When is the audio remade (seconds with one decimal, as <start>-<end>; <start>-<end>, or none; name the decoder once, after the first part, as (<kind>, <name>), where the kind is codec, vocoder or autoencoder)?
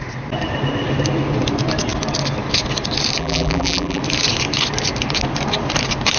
3.2-4.0 (vocoder, BigVGAN v2)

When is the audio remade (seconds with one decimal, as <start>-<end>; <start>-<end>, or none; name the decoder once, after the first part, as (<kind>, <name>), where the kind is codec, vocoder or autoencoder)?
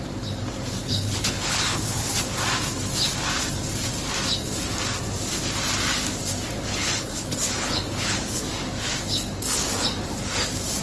0.8-2.1 (codec, HILCodec); 6.7-8.4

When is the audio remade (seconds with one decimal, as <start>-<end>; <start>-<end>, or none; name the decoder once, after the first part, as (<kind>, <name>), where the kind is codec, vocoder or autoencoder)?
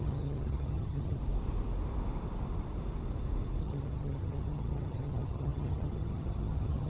0.0-1.2 (vocoder, HiFi-GAN); 3.6-6.9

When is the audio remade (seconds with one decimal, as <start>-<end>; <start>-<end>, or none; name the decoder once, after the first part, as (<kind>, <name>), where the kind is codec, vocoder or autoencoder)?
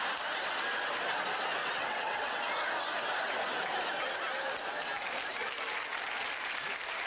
1.6-2.4 (vocoder, WaveNeXt)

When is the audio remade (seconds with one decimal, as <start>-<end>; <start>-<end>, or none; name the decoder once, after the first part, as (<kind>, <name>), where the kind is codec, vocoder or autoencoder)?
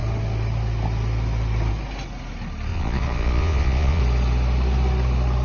2.7-4.0 (vocoder, Vocos)